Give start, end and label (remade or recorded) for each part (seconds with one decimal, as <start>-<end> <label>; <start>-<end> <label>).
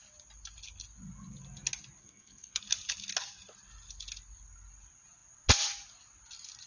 0.0-2.0 recorded; 2.0-2.6 remade; 2.6-6.7 recorded